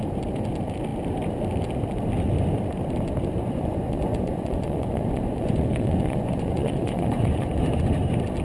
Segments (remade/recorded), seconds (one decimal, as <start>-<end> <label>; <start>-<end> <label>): 0.0-3.4 recorded; 3.4-7.6 remade; 7.6-8.4 recorded